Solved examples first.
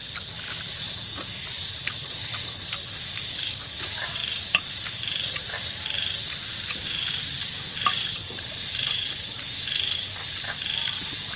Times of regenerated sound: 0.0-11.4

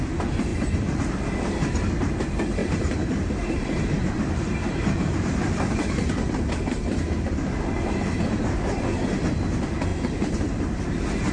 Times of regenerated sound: 0.5-1.1; 2.6-6.5; 9.9-10.8

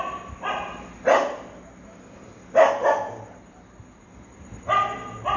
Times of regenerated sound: none

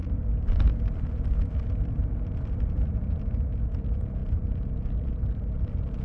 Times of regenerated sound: 0.0-3.6; 4.2-6.0

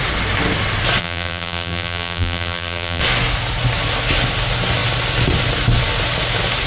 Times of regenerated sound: 1.0-3.0

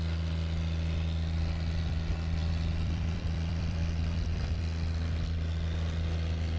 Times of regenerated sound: 2.4-4.6